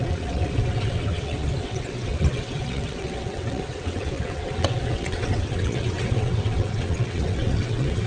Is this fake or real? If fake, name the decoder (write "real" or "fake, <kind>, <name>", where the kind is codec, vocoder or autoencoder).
fake, vocoder, WaveNeXt